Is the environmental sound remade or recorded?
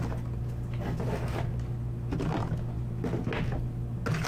recorded